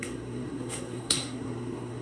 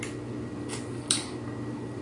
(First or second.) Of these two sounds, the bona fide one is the second